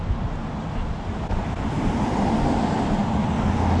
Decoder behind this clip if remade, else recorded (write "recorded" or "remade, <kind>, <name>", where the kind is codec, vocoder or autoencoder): recorded